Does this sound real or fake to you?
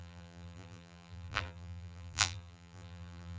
fake